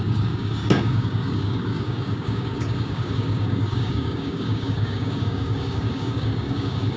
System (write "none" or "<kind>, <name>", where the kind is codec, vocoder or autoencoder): codec, DAC